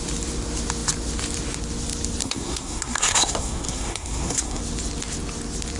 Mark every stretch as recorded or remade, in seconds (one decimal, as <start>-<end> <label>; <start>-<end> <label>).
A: 0.0-2.2 recorded; 2.2-4.6 remade; 4.6-5.8 recorded